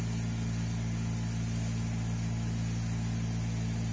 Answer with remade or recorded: recorded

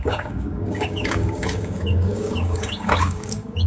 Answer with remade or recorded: remade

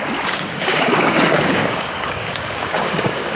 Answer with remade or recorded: remade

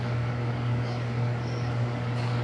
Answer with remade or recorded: remade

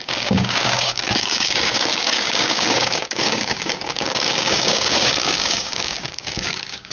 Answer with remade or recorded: remade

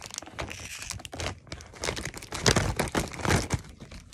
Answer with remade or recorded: recorded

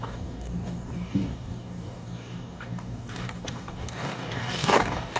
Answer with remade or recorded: remade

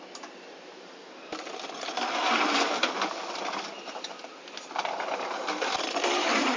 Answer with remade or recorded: recorded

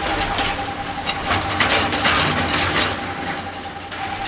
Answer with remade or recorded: recorded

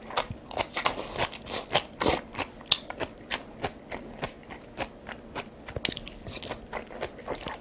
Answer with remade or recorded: recorded